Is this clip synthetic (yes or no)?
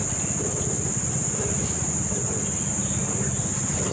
no